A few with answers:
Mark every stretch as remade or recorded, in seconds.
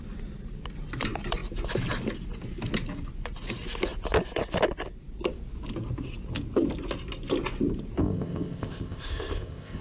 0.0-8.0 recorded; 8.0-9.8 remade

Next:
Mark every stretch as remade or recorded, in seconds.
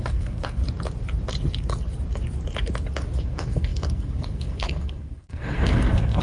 0.0-0.6 remade; 0.6-3.2 recorded; 3.2-6.2 remade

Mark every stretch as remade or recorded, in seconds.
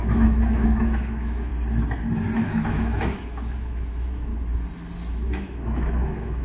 0.0-1.5 remade; 1.5-2.4 recorded; 2.4-4.3 remade; 4.3-5.1 recorded; 5.1-6.4 remade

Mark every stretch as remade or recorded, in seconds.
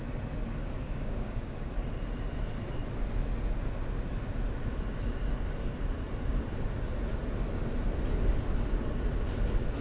0.0-0.6 recorded; 0.6-1.7 remade; 1.7-9.8 recorded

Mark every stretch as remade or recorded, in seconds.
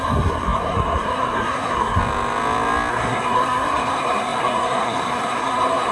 0.0-2.0 remade; 2.0-2.9 recorded; 2.9-5.9 remade